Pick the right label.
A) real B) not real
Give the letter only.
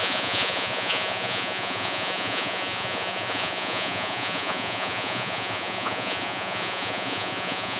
B